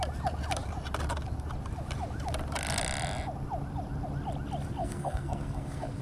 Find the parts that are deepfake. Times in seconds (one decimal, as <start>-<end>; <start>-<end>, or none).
4.8-6.0